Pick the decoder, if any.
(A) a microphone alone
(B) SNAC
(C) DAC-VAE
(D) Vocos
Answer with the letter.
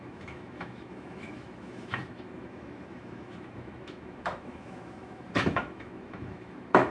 C